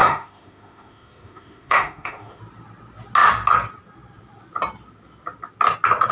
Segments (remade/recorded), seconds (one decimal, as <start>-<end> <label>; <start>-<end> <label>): 0.0-2.4 remade; 2.4-6.1 recorded